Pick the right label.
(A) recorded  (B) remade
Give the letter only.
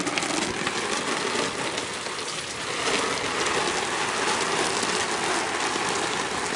A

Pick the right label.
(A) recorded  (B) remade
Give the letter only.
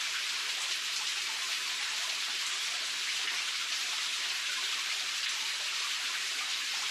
A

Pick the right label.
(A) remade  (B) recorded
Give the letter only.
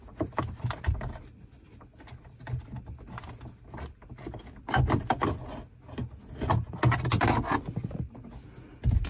B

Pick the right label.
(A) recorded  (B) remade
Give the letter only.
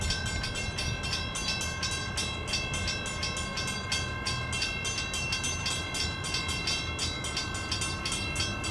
A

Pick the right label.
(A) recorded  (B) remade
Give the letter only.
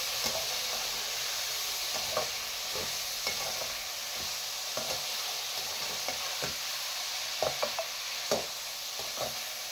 A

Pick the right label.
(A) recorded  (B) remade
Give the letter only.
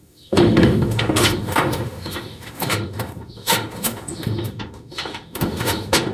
B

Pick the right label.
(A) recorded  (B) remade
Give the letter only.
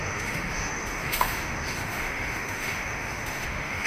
B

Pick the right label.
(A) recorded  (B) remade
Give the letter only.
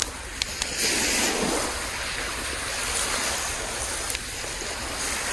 A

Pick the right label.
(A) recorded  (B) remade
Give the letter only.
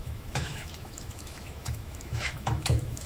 B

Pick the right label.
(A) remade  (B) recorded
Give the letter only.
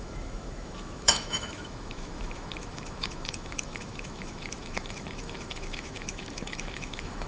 A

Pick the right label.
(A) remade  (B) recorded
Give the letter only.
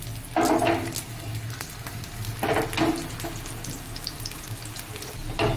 B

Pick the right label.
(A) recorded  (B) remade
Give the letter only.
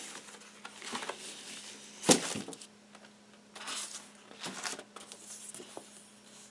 A